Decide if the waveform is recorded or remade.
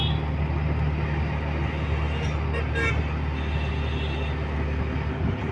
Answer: recorded